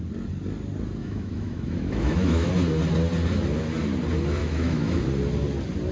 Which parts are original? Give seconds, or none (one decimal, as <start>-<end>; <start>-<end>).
0.0-1.0; 2.5-4.4; 5.0-5.9